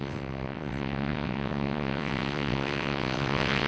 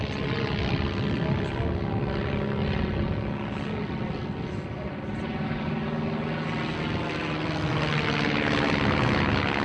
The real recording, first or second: second